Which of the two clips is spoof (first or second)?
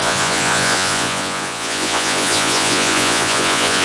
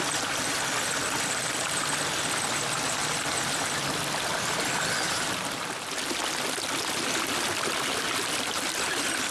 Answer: first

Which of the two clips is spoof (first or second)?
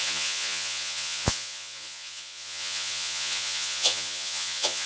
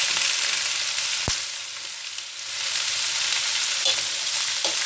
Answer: first